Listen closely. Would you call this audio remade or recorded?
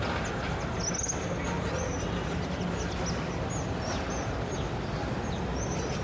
recorded